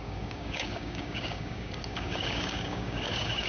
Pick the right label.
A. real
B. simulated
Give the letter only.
B